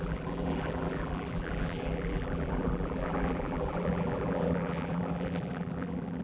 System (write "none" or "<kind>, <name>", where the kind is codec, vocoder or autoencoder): vocoder, BigVGAN v2